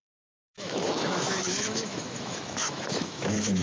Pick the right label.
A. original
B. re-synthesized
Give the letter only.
B